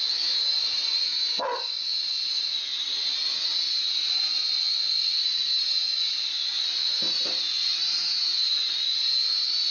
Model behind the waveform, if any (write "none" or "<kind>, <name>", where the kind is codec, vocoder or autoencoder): none